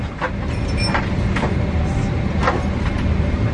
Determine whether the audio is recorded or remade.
recorded